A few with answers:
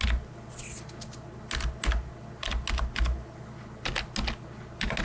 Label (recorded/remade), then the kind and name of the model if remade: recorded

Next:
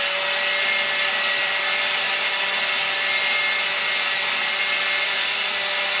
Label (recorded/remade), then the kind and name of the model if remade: recorded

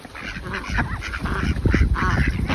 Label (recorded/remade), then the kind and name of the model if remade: recorded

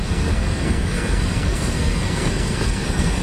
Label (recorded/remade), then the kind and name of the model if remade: remade, codec, SNAC